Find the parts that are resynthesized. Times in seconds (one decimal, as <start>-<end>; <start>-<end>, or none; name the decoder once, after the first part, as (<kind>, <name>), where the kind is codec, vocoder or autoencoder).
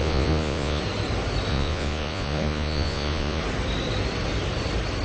0.0-0.8 (vocoder, Vocos); 1.5-3.4